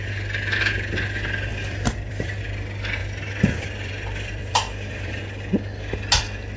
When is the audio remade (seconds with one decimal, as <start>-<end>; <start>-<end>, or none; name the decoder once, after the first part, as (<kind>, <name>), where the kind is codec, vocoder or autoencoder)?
1.5-2.4 (vocoder, BigVGAN v2); 3.0-5.2